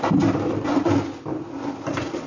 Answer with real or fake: real